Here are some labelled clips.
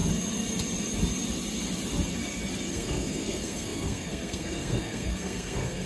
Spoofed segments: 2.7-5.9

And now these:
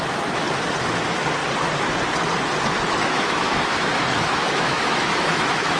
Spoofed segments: 3.0-5.8

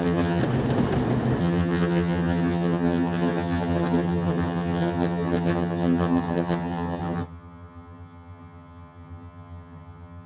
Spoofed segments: 0.0-0.4; 1.4-10.3

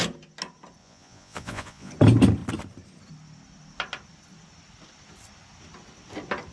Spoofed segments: 0.8-1.9

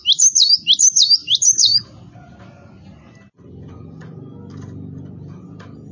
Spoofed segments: 1.2-1.8

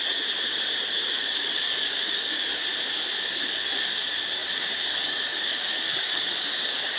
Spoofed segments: 0.9-2.6; 3.2-7.0

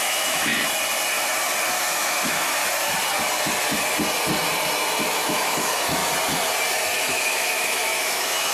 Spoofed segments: 0.0-0.5; 1.8-2.6; 5.0-6.0; 7.1-8.5

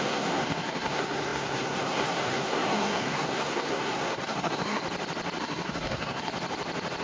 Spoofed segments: 0.0-4.8; 5.4-6.3